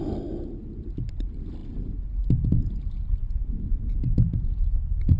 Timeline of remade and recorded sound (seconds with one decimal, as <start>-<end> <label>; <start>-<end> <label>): 0.0-5.2 recorded